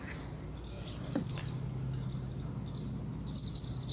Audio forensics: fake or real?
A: real